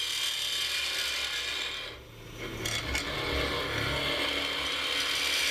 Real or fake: real